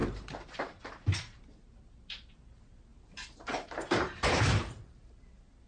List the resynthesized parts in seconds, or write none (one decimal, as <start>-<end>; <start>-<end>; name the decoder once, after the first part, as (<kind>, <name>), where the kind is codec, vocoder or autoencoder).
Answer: 0.0-0.8 (vocoder, BigVGAN v2); 2.9-5.3